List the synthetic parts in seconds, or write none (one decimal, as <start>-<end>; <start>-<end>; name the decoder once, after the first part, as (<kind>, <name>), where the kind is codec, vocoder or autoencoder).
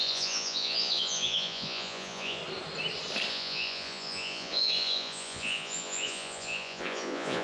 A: 0.0-2.4 (vocoder, Vocos); 3.3-7.4